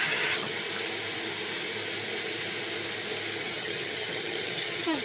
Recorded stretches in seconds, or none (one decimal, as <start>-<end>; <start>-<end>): 0.5-3.4